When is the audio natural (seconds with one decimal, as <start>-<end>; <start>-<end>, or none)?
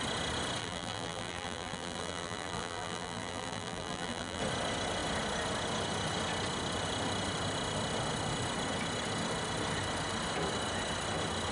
0.0-0.6; 4.4-11.5